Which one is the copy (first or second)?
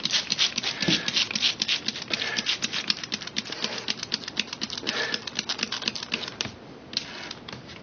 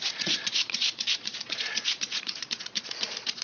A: second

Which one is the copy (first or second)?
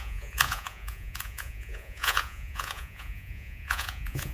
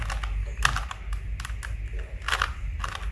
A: first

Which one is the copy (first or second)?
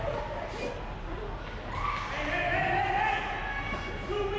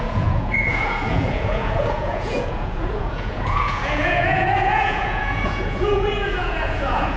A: second